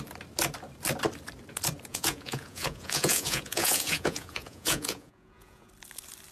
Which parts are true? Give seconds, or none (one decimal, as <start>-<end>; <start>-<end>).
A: 0.0-1.9; 5.7-6.3